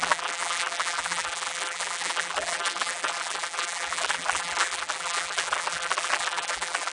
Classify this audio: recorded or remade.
remade